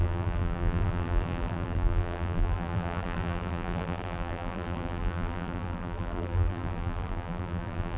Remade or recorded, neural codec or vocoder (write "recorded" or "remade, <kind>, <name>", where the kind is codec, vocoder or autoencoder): remade, vocoder, BigVGAN v2